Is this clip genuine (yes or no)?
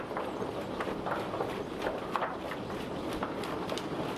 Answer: yes